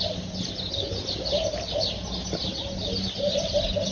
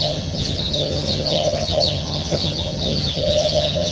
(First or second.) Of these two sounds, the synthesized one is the second